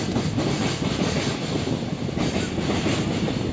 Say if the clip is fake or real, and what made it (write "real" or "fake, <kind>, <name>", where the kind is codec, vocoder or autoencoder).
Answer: real